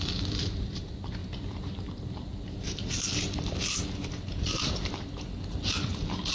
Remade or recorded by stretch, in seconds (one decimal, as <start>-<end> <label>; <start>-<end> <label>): 0.0-6.3 recorded